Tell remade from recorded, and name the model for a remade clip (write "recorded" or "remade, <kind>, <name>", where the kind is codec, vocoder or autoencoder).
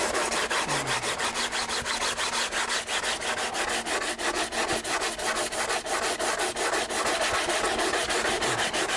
recorded